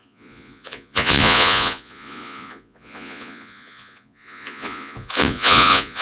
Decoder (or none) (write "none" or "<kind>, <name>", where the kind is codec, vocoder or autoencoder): vocoder, Vocos